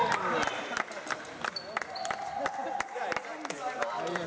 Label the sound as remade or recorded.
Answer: recorded